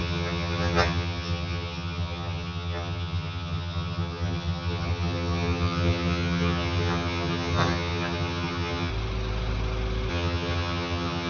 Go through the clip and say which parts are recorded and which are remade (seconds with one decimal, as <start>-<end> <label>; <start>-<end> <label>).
0.0-8.9 remade; 8.9-10.1 recorded; 10.1-11.3 remade